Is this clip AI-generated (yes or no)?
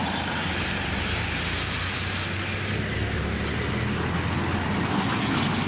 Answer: no